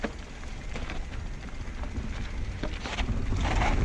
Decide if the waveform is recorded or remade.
recorded